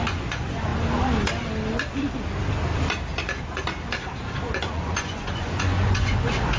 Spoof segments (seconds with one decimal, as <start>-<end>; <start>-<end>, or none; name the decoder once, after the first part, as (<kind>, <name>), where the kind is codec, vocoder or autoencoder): 0.0-0.7 (vocoder, Vocos); 4.7-6.6